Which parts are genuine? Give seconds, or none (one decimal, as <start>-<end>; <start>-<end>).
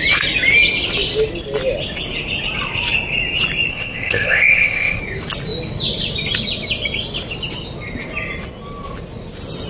0.0-3.7; 5.0-9.7